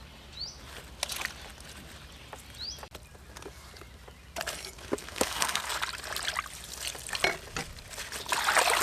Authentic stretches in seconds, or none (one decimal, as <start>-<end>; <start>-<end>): 0.0-5.0; 5.8-8.8